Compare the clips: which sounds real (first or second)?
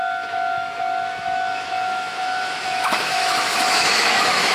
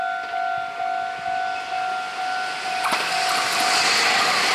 second